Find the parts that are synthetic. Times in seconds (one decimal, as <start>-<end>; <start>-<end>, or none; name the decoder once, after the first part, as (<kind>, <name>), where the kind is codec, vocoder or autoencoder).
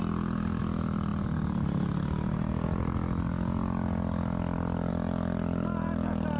none